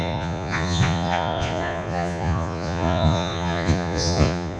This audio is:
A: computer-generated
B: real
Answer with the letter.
A